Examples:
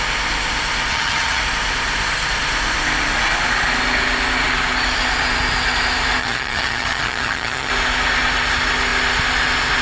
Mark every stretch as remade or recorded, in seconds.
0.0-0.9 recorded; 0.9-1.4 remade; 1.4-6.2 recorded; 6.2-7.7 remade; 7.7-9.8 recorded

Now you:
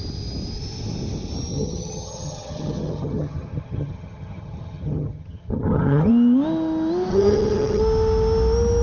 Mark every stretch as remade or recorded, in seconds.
0.0-1.5 recorded; 1.5-6.1 remade; 6.1-7.1 recorded; 7.1-7.8 remade; 7.8-8.8 recorded